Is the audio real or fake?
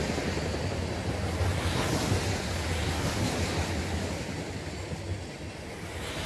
real